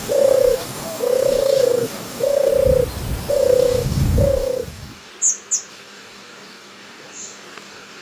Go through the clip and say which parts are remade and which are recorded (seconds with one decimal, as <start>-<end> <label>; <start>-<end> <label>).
0.0-2.5 remade; 2.5-3.3 recorded; 3.3-5.1 remade; 5.1-5.7 recorded; 5.7-8.0 remade